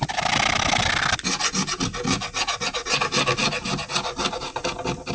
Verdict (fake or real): real